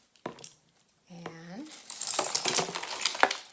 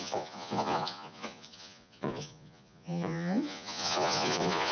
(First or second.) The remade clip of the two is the second